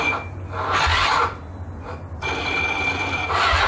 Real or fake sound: real